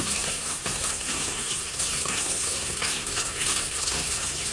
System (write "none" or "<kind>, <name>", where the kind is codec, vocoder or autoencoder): codec, SNAC